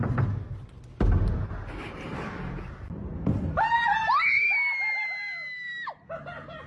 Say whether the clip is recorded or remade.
recorded